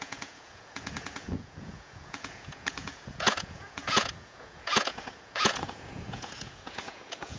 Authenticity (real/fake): fake